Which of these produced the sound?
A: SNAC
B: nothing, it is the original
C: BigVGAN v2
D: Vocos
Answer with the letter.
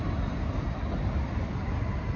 B